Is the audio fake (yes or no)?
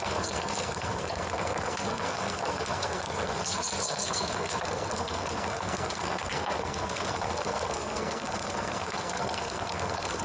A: yes